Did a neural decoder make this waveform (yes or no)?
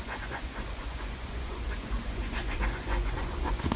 yes